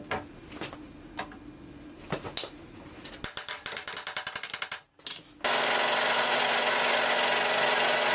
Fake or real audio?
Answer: real